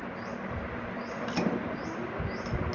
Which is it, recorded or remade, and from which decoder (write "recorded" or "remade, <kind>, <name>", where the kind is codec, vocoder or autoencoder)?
recorded